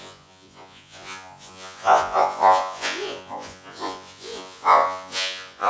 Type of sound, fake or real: fake